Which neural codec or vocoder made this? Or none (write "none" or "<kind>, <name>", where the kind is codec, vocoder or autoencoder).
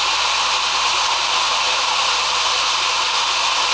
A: none